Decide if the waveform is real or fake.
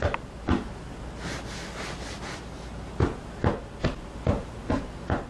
real